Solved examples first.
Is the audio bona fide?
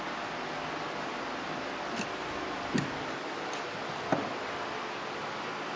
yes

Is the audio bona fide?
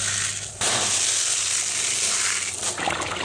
yes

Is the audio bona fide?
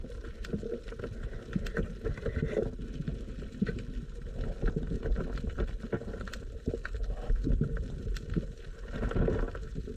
yes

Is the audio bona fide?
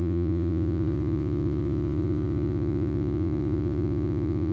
no